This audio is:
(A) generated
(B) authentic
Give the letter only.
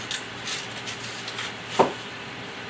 B